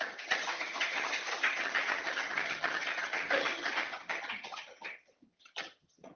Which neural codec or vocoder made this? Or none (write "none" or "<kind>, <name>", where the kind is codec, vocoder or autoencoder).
vocoder, HiFi-GAN